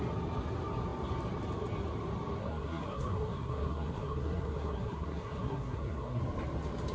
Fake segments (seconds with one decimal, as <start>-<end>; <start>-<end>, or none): 2.4-6.2